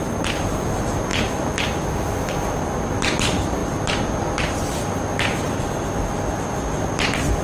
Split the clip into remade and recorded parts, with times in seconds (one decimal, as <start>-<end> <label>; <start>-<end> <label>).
0.0-1.1 remade; 1.1-2.5 recorded; 2.5-7.4 remade